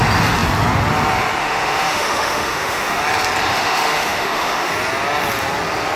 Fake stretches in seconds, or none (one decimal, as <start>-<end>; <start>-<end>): 1.4-3.0; 3.5-4.7